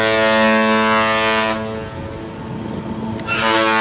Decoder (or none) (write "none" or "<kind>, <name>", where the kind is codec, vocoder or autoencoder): none